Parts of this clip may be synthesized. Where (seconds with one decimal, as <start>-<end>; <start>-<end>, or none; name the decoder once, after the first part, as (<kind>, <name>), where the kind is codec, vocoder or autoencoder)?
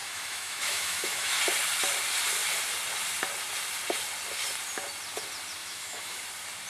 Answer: 0.0-1.4 (autoencoder, DAC-VAE); 5.6-6.2